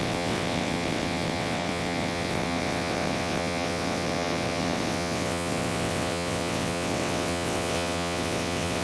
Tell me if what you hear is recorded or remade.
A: remade